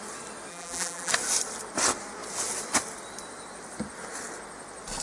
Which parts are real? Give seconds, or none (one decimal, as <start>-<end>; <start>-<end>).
0.0-0.5; 1.1-5.0